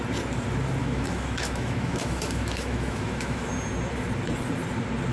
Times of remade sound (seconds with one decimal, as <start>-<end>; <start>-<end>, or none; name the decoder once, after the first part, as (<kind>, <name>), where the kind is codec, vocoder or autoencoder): 0.8-3.5 (autoencoder, DAC-VAE)